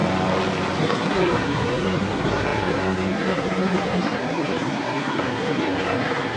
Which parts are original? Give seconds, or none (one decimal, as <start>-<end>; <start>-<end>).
0.0-0.8